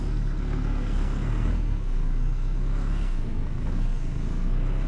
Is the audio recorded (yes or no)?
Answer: no